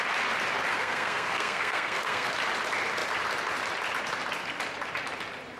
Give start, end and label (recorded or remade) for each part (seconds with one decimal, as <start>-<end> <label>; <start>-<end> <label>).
0.0-0.7 recorded; 0.7-2.3 remade; 2.3-5.6 recorded